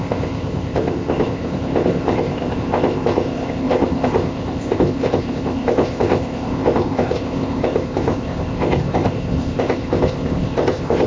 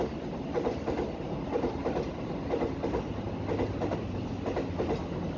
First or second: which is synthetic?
first